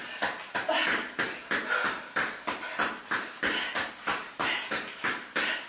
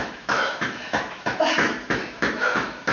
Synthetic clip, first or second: second